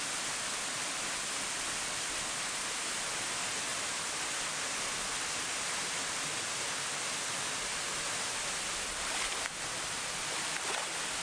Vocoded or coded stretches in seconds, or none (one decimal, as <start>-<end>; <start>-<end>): none

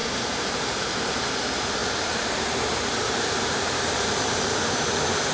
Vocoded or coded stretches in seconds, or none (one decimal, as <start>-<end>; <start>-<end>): 0.0-5.3

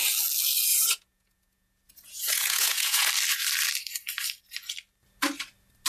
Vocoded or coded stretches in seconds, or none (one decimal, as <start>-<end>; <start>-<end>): 0.7-3.1

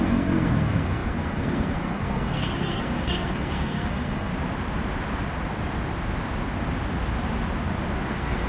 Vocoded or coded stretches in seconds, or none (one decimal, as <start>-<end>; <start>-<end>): 0.0-4.3; 8.1-8.5